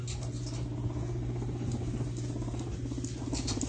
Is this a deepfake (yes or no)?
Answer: no